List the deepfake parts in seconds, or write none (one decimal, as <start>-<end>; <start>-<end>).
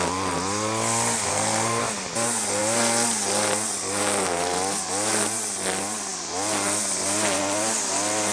1.3-1.8